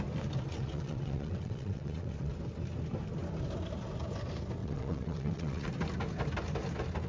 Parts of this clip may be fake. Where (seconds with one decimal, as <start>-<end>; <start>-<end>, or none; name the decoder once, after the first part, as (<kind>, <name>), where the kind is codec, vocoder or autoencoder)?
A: 0.5-2.3 (vocoder, WaveNeXt); 4.6-5.7